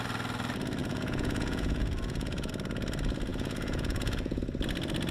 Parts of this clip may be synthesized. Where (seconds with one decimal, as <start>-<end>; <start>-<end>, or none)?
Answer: 0.8-2.5; 3.3-4.4

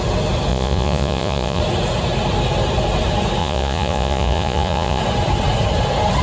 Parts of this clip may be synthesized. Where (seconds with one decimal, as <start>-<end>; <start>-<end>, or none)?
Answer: 0.5-1.6; 3.4-5.0

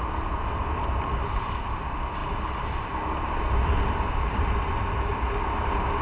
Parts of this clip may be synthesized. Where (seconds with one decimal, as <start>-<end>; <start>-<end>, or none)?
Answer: none

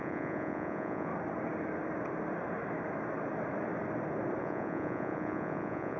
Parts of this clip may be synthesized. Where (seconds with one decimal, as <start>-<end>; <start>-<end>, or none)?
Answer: 0.0-1.1; 4.4-6.0

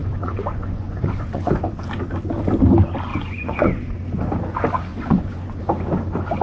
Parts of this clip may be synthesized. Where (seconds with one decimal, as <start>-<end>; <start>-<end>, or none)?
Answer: 0.0-1.5; 3.1-3.9; 4.9-5.6

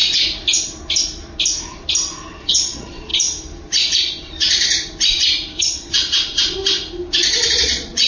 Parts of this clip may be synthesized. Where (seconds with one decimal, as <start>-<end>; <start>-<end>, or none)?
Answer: 2.4-3.1; 5.6-6.6; 7.5-8.1